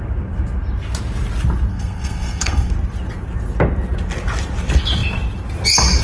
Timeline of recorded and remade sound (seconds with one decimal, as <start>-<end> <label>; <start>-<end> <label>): 0.0-1.7 recorded; 1.7-2.7 remade; 2.7-6.0 recorded